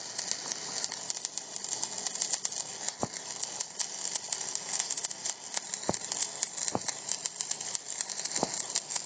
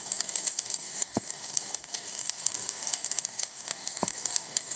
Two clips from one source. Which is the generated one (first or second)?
second